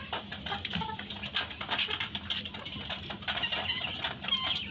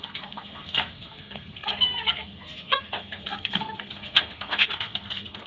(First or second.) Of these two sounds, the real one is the first